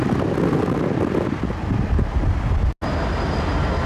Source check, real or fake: real